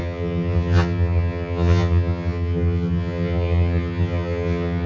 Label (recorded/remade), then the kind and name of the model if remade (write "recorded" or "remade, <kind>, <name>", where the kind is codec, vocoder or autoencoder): remade, vocoder, HiFi-GAN